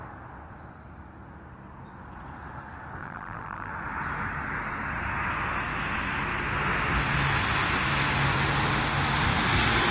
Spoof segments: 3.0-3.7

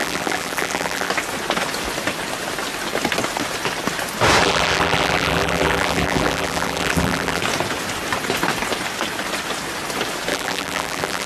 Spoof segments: 0.0-1.1; 4.4-7.4; 10.3-11.3

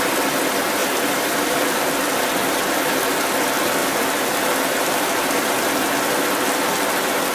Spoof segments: 0.8-1.8; 3.8-6.3

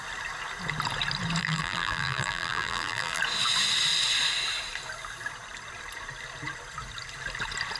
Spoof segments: 1.4-3.2

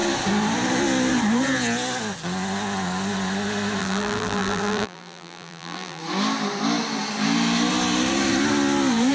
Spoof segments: 3.8-6.0

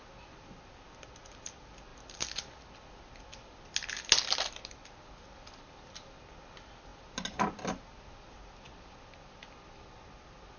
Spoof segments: none

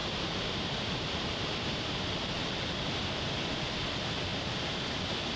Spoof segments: 0.0-3.2; 4.3-5.0